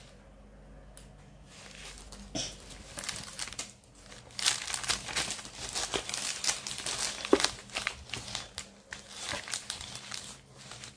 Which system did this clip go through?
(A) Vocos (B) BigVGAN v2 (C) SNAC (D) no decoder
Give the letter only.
D